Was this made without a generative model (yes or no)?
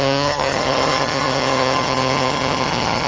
no